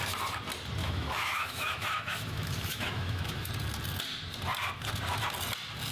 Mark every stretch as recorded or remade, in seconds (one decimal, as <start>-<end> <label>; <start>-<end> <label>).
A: 0.0-0.8 recorded; 0.8-3.5 remade; 3.5-5.9 recorded